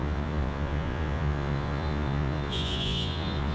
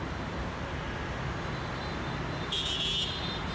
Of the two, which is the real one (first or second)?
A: second